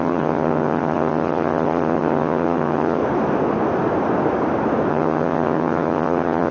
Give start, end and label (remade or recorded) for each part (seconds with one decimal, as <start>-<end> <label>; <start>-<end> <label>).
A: 0.0-3.0 remade; 3.0-4.9 recorded; 4.9-6.5 remade

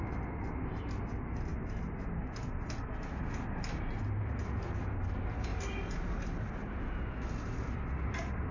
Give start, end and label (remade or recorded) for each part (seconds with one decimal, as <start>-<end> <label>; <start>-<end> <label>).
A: 0.0-8.5 recorded

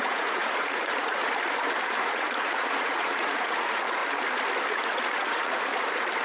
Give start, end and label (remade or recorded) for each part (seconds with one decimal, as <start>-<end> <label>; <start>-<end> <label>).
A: 0.0-1.2 remade; 1.2-1.8 recorded; 1.8-4.0 remade; 4.0-4.7 recorded; 4.7-5.7 remade; 5.7-6.2 recorded

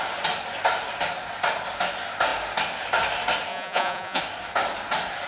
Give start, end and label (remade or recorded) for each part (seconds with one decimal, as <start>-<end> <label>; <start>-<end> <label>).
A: 0.0-3.5 recorded; 3.5-4.2 remade; 4.2-5.3 recorded

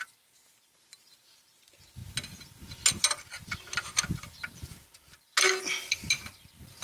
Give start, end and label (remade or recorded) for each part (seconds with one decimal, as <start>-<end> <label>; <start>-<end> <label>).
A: 0.0-6.8 recorded

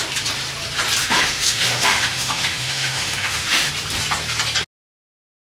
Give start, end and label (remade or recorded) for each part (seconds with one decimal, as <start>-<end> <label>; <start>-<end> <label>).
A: 0.0-1.0 recorded; 1.0-3.7 remade; 3.7-5.5 recorded

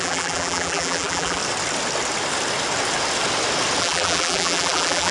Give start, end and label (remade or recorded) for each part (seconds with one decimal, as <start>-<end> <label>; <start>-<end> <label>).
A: 0.0-1.4 remade; 1.4-3.8 recorded; 3.8-5.1 remade

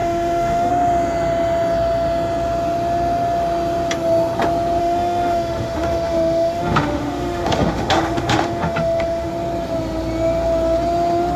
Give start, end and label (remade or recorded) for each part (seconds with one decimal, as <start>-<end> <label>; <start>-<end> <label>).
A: 0.0-0.7 remade; 0.7-4.8 recorded; 4.8-9.3 remade; 9.3-11.4 recorded